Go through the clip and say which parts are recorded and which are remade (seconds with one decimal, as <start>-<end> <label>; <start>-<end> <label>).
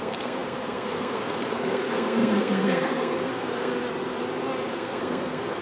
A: 0.0-3.7 remade; 3.7-4.7 recorded; 4.7-5.6 remade